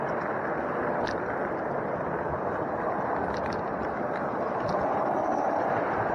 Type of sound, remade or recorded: recorded